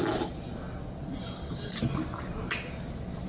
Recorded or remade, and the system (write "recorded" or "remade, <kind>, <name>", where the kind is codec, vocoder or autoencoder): recorded